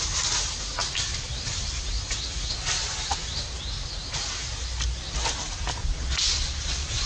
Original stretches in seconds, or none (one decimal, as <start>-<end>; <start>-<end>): 0.0-5.8